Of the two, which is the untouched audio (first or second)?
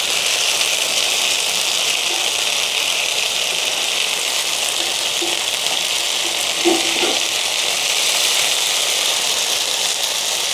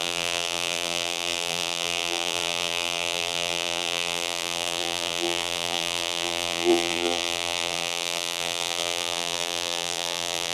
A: first